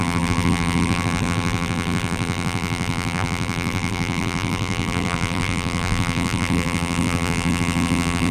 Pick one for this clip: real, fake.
fake